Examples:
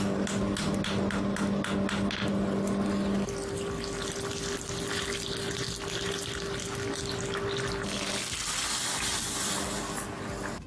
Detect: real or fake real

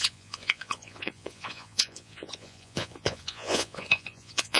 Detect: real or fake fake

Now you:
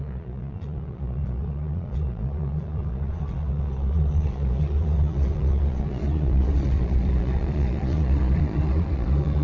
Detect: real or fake fake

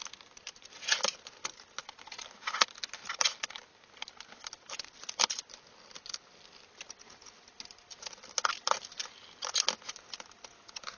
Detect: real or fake real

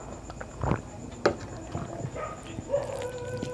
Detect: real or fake real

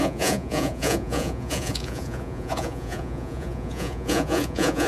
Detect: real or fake fake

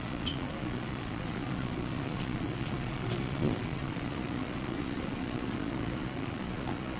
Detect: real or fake fake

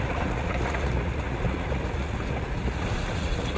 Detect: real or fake fake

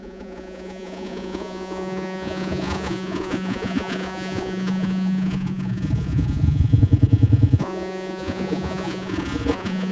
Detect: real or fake fake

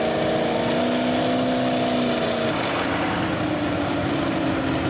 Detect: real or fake real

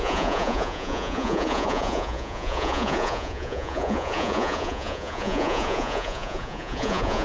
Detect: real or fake fake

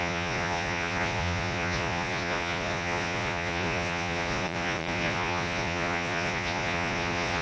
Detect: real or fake fake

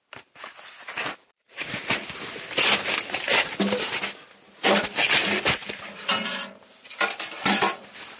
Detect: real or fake real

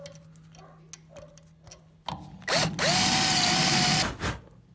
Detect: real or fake real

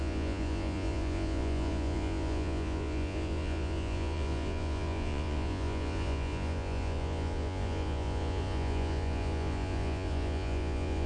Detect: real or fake fake